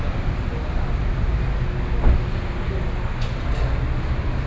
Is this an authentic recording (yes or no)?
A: yes